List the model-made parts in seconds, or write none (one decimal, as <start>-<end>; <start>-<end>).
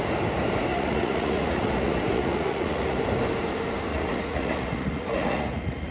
0.7-3.0; 3.9-5.9